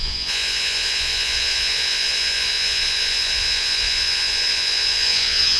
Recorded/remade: remade